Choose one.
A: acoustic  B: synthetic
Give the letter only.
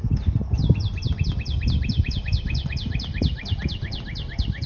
A